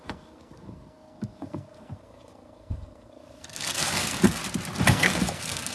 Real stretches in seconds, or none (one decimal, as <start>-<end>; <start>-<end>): 4.4-4.9